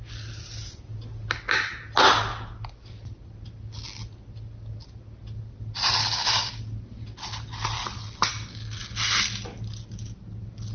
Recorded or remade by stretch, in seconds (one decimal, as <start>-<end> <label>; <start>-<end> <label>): 0.0-6.0 recorded; 6.0-6.6 remade; 6.6-10.7 recorded